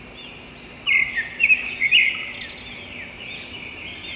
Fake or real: real